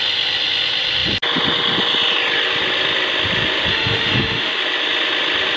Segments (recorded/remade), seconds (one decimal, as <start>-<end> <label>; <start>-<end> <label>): 0.0-3.7 recorded; 3.7-4.6 remade; 4.6-5.6 recorded